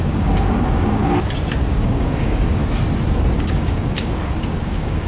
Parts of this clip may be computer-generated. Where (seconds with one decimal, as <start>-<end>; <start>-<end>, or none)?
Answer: 0.0-1.0; 1.7-2.6; 3.4-5.1